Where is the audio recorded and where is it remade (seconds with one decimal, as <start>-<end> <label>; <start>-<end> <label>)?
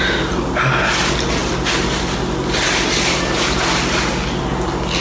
0.0-5.0 recorded